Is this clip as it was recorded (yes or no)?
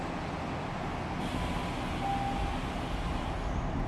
yes